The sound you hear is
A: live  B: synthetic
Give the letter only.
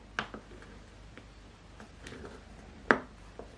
A